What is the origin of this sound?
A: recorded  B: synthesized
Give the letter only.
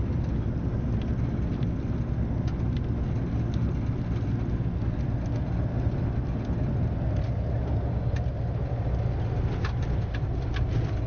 A